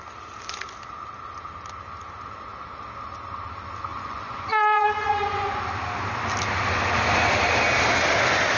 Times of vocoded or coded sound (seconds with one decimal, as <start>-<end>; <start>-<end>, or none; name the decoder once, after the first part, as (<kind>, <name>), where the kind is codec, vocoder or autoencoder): 3.9-5.6 (vocoder, Vocos)